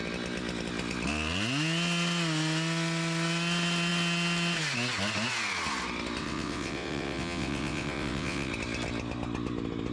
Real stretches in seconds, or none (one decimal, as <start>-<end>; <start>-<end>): 0.0-6.2; 8.5-9.9